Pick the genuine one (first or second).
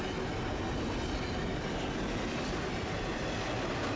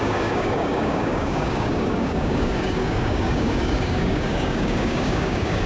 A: first